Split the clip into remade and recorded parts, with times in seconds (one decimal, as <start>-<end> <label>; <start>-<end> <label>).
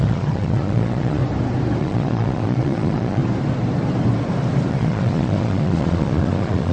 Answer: 0.0-1.2 remade; 1.2-1.8 recorded; 1.8-3.2 remade; 3.2-4.7 recorded; 4.7-6.7 remade